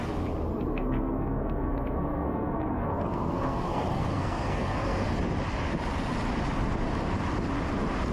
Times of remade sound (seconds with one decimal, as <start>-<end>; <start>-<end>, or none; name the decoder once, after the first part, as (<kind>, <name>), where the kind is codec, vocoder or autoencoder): 0.5-5.1 (codec, SNAC)